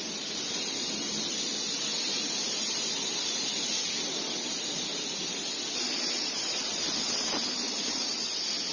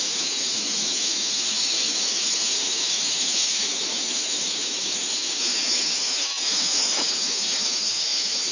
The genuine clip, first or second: first